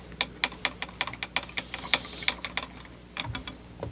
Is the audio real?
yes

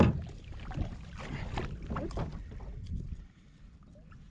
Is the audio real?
yes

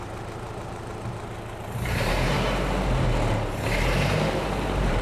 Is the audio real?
no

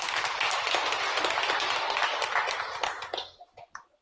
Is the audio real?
yes